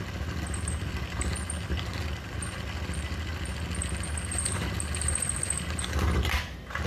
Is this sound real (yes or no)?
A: yes